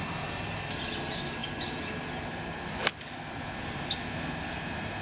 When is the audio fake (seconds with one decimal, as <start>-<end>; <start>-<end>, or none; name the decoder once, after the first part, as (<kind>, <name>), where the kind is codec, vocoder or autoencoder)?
none